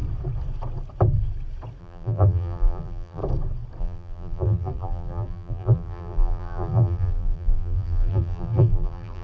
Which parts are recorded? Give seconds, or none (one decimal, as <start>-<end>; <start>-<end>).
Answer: 0.0-1.8; 3.2-3.8